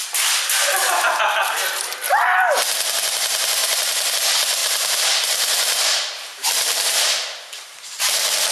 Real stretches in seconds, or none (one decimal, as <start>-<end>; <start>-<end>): 0.0-3.6; 4.1-4.6; 8.0-8.5